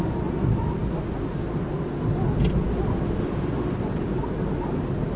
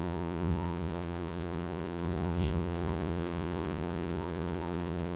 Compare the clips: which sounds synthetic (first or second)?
second